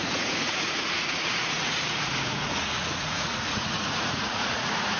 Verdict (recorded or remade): remade